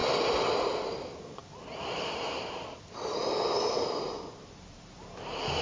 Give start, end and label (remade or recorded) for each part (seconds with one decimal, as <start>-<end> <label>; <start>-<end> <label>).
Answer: 0.0-1.4 recorded; 1.4-4.8 remade; 4.8-5.6 recorded